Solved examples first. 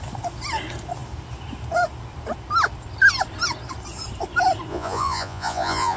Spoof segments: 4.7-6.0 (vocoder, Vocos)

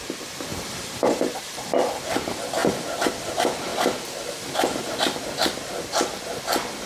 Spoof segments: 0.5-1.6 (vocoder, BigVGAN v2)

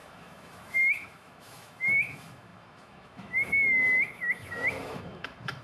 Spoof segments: 0.0-5.6 (autoencoder, DAC-VAE)

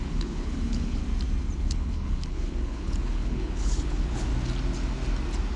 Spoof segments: 0.0-1.0 (codec, HILCodec); 1.6-4.3

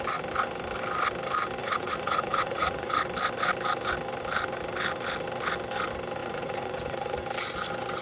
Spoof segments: 1.6-2.9 (vocoder, Vocos); 6.2-7.2

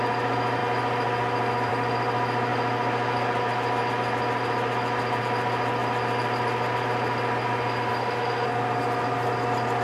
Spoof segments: none